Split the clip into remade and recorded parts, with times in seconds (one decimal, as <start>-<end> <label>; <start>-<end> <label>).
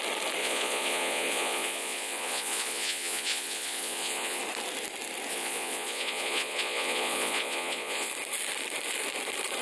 0.0-0.4 recorded; 0.4-4.4 remade; 4.4-5.3 recorded; 5.3-8.1 remade; 8.1-9.6 recorded